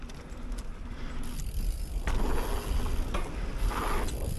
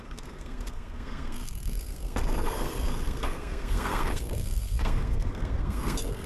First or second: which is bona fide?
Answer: first